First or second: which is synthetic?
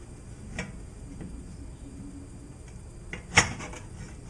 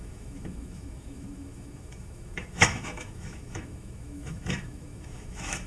second